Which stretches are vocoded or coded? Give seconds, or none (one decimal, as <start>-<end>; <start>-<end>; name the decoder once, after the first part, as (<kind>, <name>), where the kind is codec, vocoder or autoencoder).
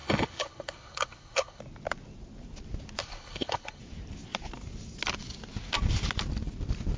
0.0-1.6 (codec, HILCodec); 3.0-3.8